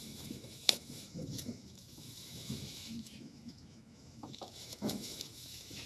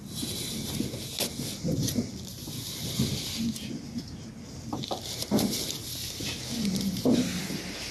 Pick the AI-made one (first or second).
first